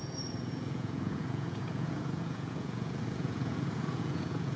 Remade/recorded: remade